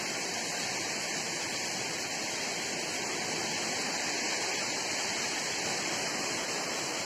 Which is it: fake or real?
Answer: real